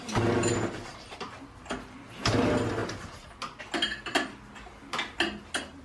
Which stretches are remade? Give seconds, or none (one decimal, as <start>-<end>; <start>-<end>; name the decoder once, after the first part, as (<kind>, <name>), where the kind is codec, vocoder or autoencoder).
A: none